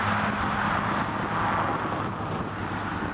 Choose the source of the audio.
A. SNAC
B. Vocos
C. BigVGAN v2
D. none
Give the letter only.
D